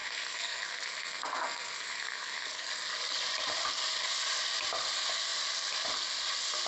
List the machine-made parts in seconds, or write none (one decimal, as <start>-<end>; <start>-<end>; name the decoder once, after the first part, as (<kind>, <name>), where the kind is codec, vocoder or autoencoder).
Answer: 0.0-2.7 (codec, SNAC)